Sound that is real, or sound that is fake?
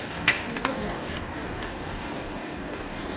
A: fake